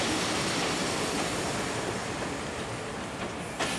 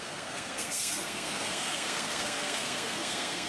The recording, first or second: first